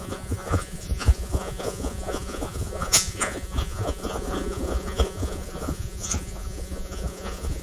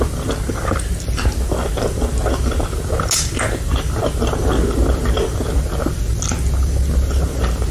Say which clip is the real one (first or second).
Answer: second